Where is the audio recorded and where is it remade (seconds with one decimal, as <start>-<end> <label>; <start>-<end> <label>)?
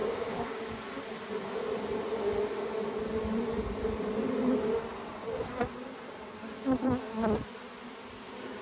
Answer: 0.0-0.8 remade; 0.8-8.6 recorded